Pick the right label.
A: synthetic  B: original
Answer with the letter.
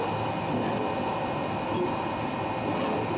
B